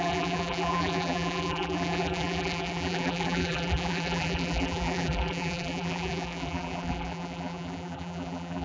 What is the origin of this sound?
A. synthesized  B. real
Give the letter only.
A